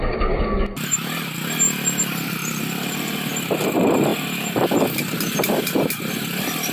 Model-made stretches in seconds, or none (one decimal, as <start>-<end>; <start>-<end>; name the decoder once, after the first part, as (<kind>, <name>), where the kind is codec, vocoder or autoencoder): 2.4-3.3 (vocoder, BigVGAN v2)